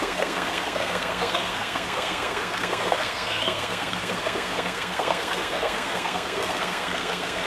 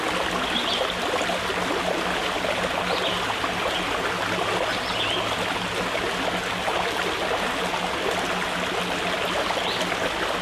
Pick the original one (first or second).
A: second